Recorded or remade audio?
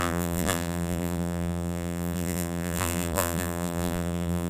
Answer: remade